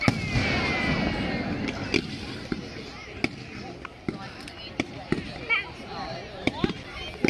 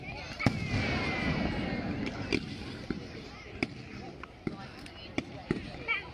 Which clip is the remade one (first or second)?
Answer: second